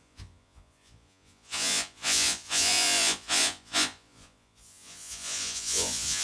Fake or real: fake